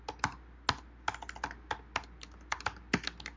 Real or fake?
real